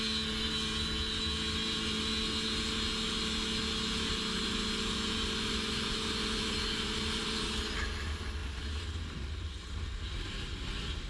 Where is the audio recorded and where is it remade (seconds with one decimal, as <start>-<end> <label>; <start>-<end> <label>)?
0.0-11.1 recorded